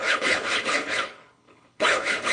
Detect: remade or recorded remade